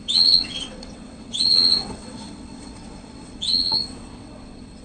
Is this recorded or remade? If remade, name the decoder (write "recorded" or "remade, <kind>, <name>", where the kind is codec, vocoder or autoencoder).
remade, vocoder, WaveNeXt